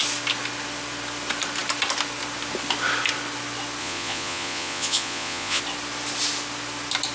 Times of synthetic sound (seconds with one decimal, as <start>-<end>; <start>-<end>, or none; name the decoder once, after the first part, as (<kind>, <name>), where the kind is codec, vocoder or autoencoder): 3.8-5.6 (vocoder, Vocos)